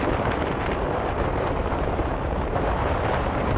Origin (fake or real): fake